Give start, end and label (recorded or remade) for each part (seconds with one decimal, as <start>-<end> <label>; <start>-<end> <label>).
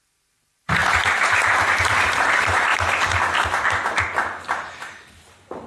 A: 0.0-2.7 remade; 2.7-4.9 recorded; 4.9-5.7 remade